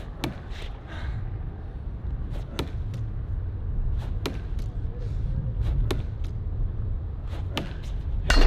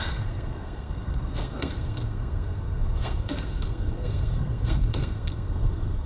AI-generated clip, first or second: second